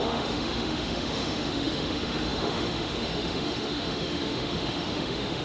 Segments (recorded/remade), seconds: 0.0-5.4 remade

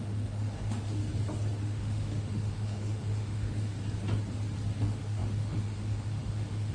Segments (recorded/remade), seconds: 0.0-1.0 remade; 1.0-1.6 recorded; 1.6-3.7 remade; 3.7-4.7 recorded; 4.7-6.7 remade

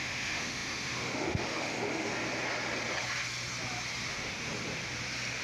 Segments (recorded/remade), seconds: 0.0-2.1 remade; 2.1-4.1 recorded; 4.1-4.5 remade; 4.5-5.4 recorded